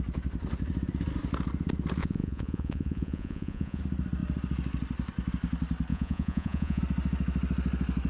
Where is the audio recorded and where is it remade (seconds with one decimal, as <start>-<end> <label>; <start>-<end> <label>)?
0.0-2.0 recorded; 2.0-3.8 remade; 3.8-5.9 recorded; 5.9-6.8 remade; 6.8-8.1 recorded